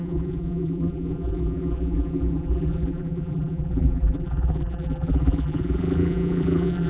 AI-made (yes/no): yes